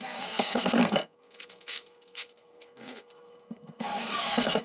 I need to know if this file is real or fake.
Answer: fake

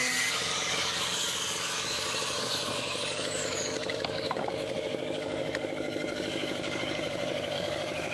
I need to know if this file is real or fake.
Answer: fake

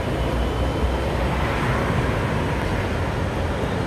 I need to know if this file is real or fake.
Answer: real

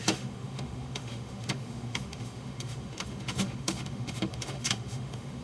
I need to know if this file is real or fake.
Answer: fake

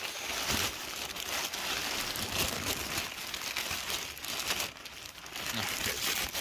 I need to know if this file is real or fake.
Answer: real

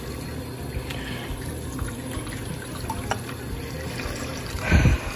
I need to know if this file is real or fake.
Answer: real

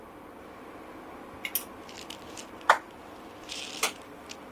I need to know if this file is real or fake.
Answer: real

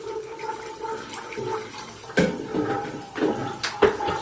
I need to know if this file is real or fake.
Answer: real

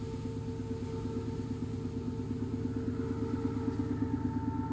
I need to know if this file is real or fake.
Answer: real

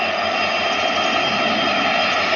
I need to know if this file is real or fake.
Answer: real